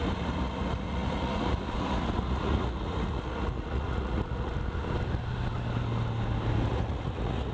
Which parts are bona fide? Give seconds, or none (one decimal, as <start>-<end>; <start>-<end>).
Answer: 4.5-6.7